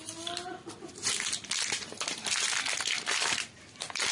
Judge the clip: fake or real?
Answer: real